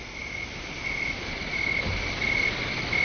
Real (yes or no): yes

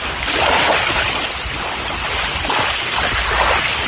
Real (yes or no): yes